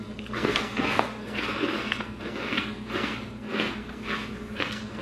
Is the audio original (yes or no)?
no